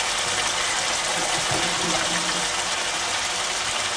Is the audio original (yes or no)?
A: yes